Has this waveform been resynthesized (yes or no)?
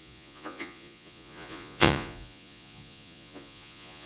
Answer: yes